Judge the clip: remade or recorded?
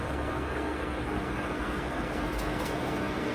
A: remade